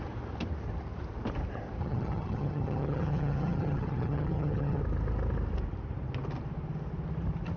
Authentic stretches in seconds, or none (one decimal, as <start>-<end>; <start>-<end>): 0.0-1.8; 4.8-7.6